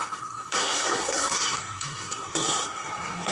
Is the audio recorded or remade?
remade